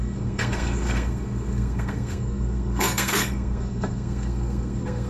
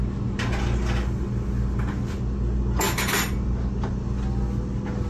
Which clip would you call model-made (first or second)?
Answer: first